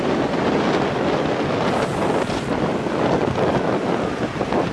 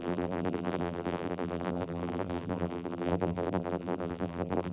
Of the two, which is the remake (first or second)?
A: second